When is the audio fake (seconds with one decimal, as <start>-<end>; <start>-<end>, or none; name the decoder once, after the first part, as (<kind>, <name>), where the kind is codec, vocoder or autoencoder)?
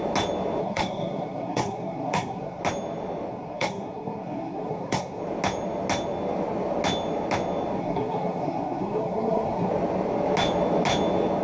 0.6-2.6 (codec, SNAC); 3.3-5.2; 7.8-9.7